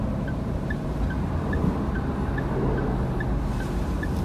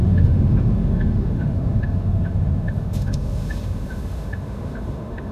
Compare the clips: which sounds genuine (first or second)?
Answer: first